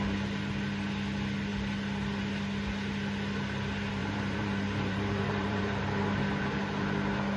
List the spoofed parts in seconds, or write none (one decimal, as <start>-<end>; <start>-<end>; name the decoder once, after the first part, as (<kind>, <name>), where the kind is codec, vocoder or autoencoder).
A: 4.0-5.8 (vocoder, BigVGAN v2)